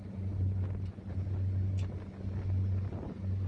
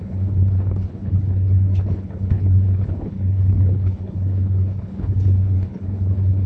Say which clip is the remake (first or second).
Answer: second